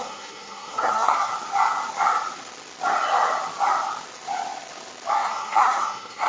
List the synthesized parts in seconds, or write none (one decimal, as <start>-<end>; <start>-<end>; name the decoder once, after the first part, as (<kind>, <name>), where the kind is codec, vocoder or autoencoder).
0.0-1.3 (codec, SNAC); 5.1-6.3